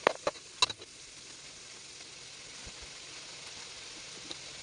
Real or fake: real